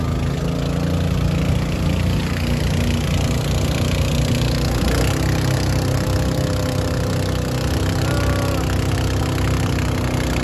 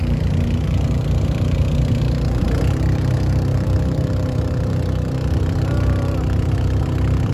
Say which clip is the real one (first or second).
first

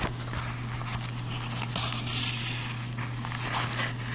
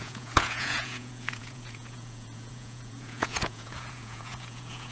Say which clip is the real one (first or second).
first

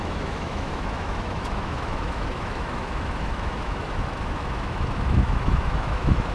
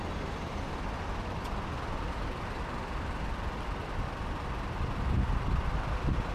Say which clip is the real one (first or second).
second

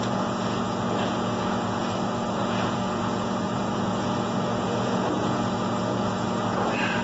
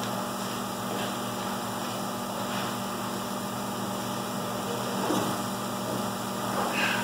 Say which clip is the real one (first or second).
second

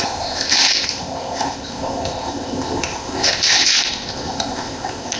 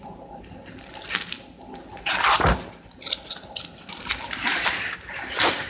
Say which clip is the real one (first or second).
second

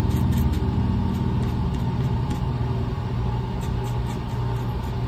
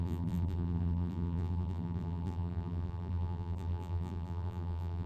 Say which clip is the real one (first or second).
first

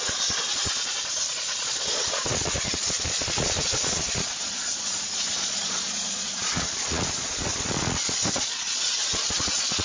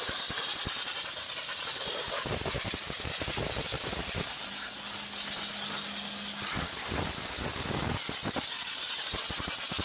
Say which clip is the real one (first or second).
second